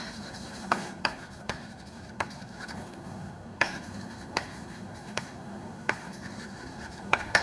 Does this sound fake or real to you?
fake